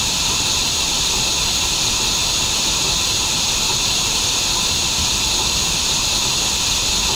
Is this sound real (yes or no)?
yes